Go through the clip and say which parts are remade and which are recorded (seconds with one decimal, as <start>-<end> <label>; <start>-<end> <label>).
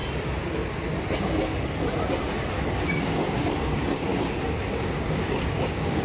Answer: 0.0-2.7 recorded; 2.7-4.1 remade; 4.1-4.7 recorded; 4.7-6.0 remade